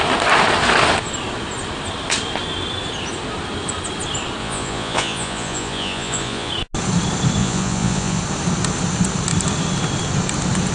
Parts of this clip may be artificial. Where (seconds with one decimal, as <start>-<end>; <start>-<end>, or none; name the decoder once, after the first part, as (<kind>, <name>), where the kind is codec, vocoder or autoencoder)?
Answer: 4.4-6.5 (vocoder, Vocos); 7.4-8.2